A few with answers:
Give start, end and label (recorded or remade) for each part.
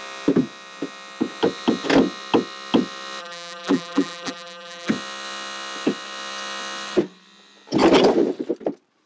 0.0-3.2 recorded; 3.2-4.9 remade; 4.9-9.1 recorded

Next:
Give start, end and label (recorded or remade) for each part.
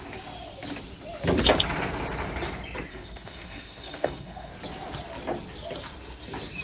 0.0-2.9 recorded; 2.9-4.5 remade; 4.5-6.6 recorded